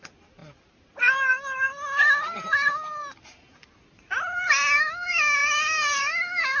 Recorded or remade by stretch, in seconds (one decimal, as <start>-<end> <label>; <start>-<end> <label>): 0.0-6.6 recorded